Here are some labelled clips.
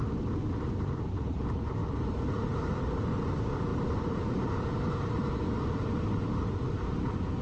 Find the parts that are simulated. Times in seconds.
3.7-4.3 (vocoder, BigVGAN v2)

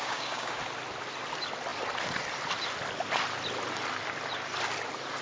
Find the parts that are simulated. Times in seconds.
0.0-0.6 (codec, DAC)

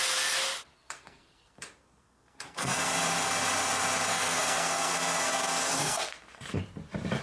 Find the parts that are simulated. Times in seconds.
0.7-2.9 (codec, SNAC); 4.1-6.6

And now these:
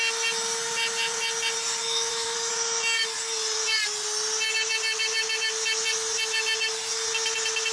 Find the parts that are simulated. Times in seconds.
1.8-2.5 (autoencoder, DAC-VAE)